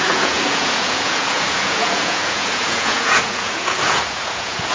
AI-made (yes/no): yes